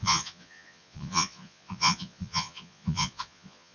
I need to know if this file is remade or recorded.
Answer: remade